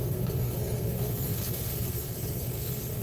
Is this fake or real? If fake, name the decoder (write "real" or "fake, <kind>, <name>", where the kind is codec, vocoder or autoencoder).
fake, codec, SNAC